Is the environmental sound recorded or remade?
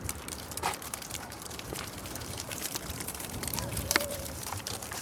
remade